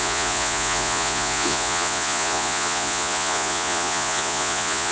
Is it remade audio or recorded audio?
remade